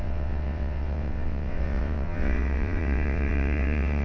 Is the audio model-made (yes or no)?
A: yes